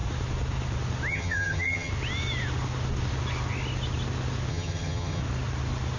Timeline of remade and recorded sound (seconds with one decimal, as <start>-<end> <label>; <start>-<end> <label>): 0.0-1.1 recorded; 1.1-1.9 remade; 1.9-4.5 recorded; 4.5-5.2 remade; 5.2-6.0 recorded